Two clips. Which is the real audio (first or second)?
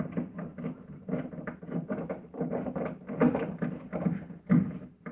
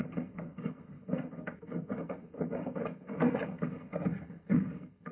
first